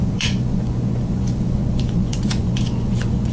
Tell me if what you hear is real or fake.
fake